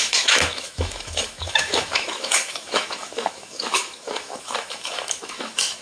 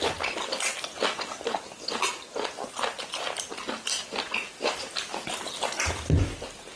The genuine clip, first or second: second